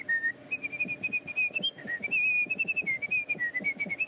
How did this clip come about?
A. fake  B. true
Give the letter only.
B